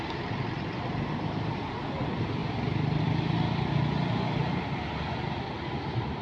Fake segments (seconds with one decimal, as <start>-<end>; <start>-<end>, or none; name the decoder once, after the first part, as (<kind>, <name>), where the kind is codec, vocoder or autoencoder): none